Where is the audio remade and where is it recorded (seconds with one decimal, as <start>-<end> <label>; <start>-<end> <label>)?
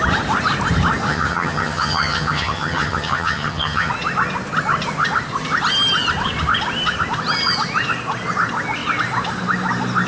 0.0-1.1 recorded; 1.1-3.9 remade; 3.9-10.1 recorded